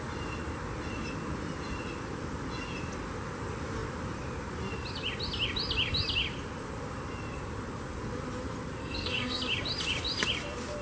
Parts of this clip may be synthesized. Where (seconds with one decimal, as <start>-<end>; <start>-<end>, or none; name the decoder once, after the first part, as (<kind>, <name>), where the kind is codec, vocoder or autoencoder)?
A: 8.8-9.4 (codec, SNAC)